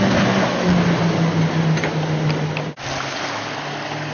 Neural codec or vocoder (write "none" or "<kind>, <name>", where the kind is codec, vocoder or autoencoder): none